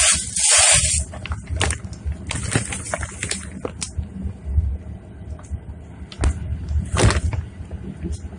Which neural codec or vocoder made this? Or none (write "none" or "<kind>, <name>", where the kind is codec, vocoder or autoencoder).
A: none